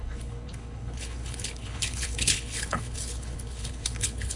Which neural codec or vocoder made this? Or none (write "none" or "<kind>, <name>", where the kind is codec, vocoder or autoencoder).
codec, HILCodec